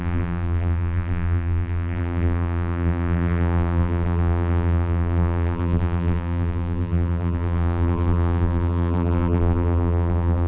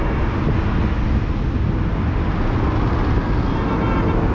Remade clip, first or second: first